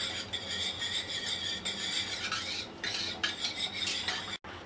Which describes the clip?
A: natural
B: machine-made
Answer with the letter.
A